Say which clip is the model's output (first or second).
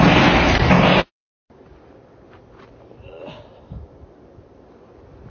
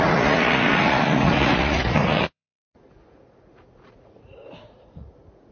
second